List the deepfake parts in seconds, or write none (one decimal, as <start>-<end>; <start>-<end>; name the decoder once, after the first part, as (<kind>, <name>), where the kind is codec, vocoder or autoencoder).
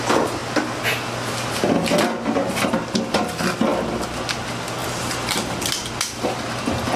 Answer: 4.8-5.9 (vocoder, BigVGAN v2)